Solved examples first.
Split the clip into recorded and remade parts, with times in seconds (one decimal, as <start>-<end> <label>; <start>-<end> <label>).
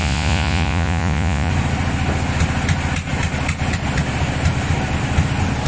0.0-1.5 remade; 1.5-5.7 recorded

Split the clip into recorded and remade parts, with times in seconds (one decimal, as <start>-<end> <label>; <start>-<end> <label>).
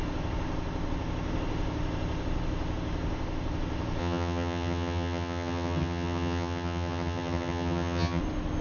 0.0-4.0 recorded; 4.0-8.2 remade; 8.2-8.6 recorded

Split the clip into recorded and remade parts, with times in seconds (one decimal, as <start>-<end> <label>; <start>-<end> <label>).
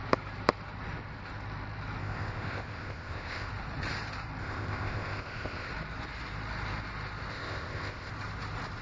0.0-2.0 recorded; 2.0-3.5 remade; 3.5-4.4 recorded; 4.4-5.7 remade; 5.7-7.3 recorded; 7.3-8.1 remade; 8.1-8.8 recorded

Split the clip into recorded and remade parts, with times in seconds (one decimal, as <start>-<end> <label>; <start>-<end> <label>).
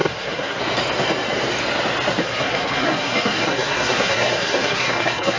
0.0-0.6 remade; 0.6-2.2 recorded; 2.2-5.4 remade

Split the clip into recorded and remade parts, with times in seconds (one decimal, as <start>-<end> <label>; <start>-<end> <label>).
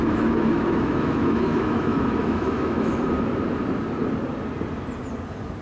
0.0-3.0 remade; 3.0-5.6 recorded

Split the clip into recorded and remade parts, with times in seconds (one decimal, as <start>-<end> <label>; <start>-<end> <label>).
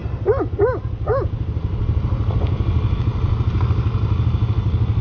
0.0-5.0 recorded